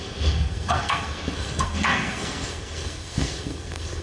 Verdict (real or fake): fake